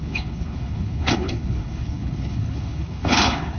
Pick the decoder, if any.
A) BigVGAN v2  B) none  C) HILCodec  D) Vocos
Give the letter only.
C